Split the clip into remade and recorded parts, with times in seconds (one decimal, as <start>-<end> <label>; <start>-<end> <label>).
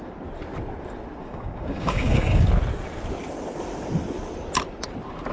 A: 0.0-1.2 recorded; 1.2-2.5 remade; 2.5-5.3 recorded